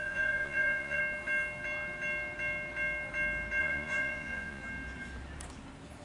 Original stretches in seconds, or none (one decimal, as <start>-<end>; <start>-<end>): 1.0-3.6; 4.6-6.0